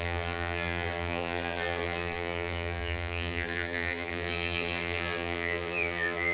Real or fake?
fake